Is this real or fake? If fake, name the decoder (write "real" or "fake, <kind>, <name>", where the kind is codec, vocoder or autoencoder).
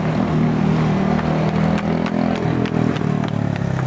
real